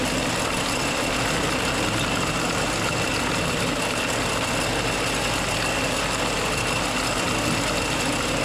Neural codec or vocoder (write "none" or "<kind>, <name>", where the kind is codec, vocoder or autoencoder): none